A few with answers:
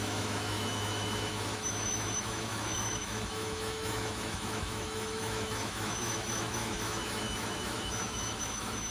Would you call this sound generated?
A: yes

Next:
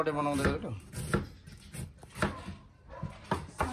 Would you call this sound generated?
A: no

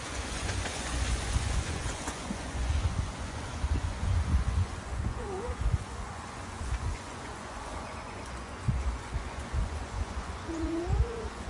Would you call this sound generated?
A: yes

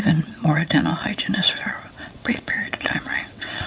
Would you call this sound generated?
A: yes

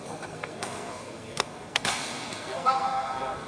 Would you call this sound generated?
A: yes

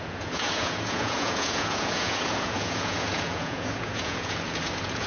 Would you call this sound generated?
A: yes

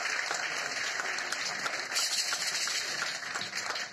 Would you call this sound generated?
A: no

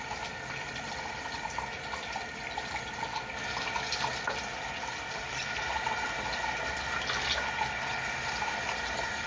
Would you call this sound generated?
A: no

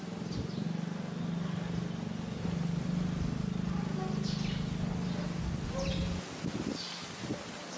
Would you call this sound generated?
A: no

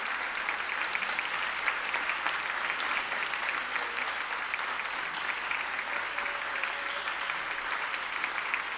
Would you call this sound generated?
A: no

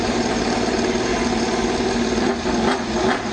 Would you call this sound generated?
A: yes